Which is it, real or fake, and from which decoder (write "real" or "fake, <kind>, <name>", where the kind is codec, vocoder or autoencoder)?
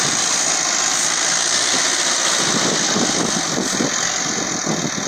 real